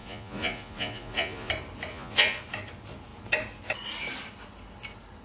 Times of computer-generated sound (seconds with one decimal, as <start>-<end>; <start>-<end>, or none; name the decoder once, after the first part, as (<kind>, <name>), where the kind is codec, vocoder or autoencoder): 0.0-1.5 (vocoder, Vocos); 1.9-2.4